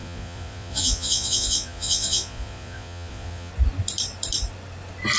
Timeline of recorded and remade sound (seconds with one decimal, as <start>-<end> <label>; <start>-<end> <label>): 0.0-3.5 remade; 3.5-5.2 recorded